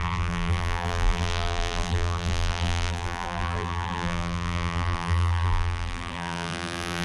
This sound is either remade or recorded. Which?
remade